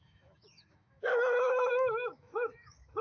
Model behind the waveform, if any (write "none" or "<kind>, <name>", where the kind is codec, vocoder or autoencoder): autoencoder, DAC-VAE